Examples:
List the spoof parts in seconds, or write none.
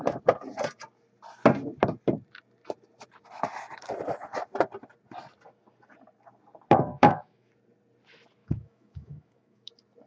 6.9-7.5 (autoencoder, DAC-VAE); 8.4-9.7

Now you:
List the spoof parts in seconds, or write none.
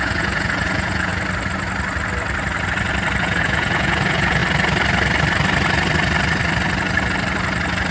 0.0-1.1 (vocoder, Vocos); 3.2-4.4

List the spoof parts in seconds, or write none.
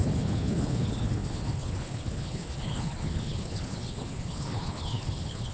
0.0-5.5 (codec, HILCodec)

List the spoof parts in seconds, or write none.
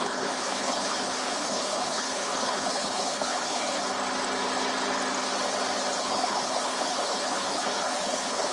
0.0-3.8 (codec, HILCodec); 6.0-8.5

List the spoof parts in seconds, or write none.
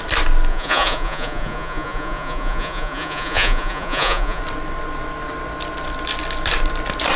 0.5-4.4 (vocoder, Vocos)